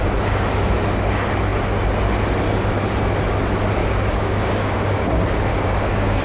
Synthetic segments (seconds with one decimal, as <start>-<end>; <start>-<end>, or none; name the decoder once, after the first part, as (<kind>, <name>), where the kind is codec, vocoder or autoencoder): 3.8-5.1 (codec, DAC); 5.5-6.2